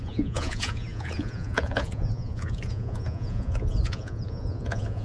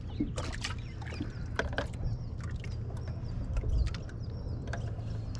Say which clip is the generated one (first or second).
first